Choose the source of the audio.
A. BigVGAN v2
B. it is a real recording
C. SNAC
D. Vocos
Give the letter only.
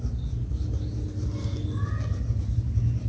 B